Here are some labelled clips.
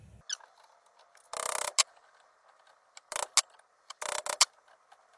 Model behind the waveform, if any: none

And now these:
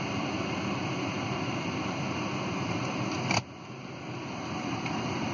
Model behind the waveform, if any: none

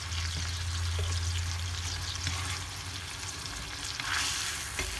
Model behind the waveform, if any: none